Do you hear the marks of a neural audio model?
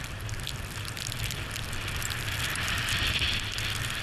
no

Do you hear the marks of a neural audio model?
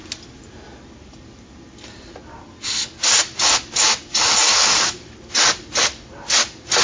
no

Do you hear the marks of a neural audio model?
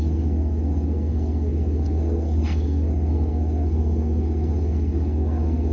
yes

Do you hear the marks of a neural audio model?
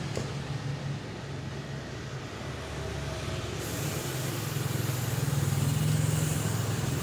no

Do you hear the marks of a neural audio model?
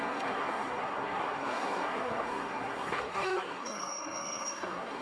yes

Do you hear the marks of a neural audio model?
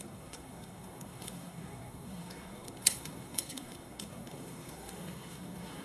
yes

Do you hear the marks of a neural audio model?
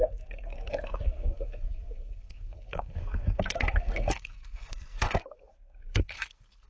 yes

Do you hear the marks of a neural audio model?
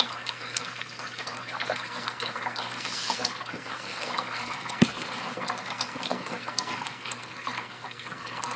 yes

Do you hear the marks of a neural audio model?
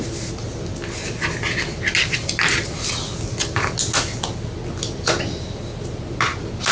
no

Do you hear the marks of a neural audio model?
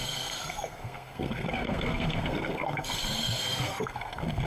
yes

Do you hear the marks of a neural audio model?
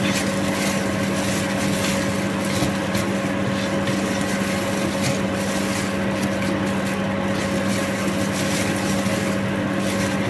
no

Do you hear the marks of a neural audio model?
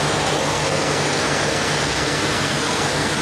yes